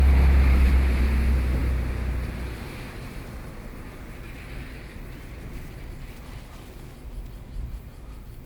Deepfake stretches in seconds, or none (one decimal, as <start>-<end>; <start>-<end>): none